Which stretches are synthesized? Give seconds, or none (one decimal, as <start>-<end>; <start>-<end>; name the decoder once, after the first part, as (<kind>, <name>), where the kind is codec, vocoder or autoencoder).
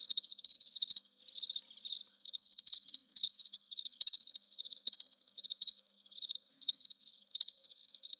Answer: 0.0-1.2 (codec, SNAC); 2.1-8.2